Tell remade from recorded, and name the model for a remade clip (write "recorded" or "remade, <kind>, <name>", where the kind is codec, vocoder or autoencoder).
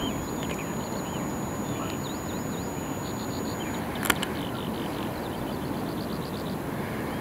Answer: recorded